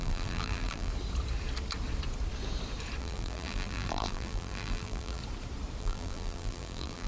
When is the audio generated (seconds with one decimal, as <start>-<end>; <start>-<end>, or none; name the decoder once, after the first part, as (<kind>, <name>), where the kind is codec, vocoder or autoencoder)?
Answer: 0.0-0.9 (vocoder, BigVGAN v2); 3.0-5.2; 5.8-7.1